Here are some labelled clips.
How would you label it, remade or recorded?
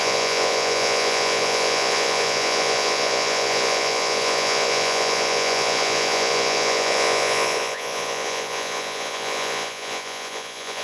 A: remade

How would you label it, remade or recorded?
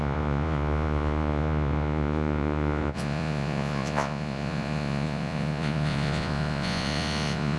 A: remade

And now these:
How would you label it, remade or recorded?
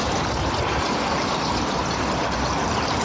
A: recorded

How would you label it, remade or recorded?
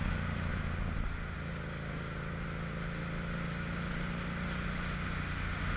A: recorded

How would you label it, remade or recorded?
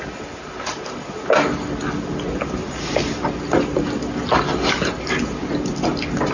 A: recorded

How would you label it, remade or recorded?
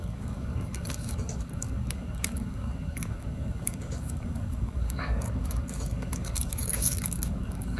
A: remade